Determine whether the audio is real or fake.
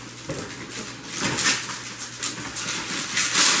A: real